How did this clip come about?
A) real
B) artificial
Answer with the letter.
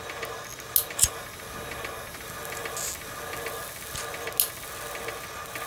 A